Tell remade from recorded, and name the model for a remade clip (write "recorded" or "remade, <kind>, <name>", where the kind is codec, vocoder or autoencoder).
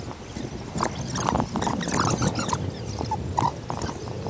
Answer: recorded